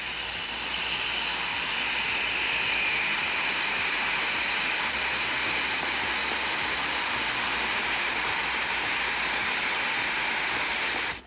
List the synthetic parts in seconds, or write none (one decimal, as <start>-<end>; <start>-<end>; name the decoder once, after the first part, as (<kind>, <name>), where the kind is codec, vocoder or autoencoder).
none